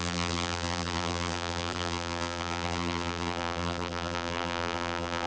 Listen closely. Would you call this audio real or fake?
fake